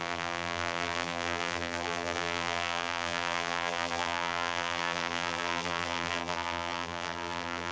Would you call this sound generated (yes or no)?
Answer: yes